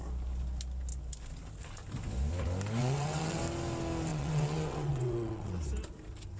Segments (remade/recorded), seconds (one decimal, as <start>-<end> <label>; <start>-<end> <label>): 0.0-2.8 recorded; 2.8-3.4 remade; 3.4-4.1 recorded; 4.1-5.6 remade; 5.6-6.4 recorded